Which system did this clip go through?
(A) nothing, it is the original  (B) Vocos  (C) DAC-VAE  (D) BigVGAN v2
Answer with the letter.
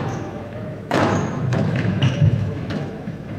C